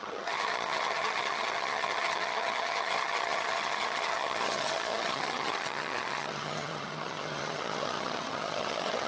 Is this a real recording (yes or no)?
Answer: no